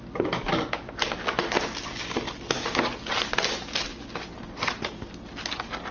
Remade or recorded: recorded